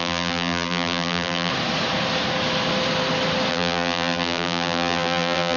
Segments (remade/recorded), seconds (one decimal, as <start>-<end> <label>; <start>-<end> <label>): 0.0-1.5 remade; 1.5-3.5 recorded; 3.5-5.6 remade